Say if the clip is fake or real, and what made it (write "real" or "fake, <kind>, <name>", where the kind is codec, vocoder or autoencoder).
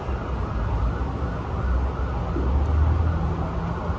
real